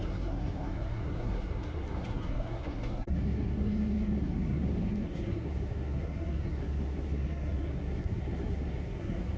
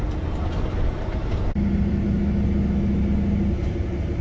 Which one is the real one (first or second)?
second